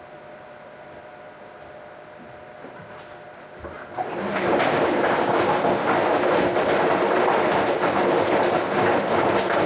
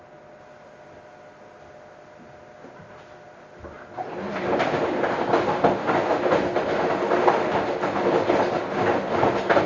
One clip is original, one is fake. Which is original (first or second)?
second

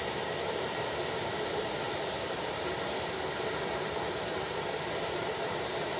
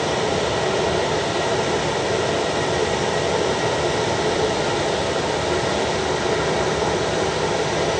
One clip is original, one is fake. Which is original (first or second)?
second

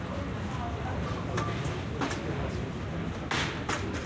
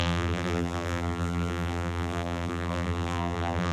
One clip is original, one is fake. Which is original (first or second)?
first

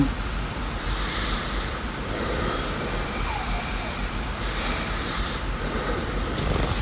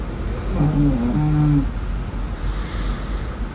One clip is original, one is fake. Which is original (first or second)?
second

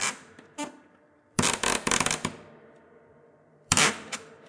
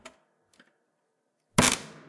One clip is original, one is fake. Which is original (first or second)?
second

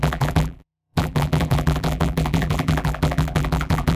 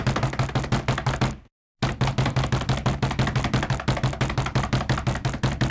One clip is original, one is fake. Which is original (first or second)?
second